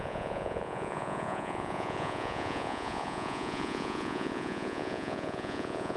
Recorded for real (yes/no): no